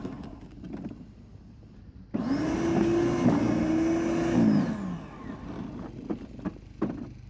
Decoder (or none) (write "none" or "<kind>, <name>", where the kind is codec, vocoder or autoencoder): none